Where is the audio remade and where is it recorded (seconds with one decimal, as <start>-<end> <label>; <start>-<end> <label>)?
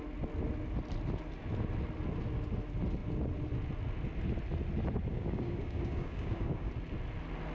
0.0-5.1 recorded; 5.1-6.7 remade; 6.7-7.5 recorded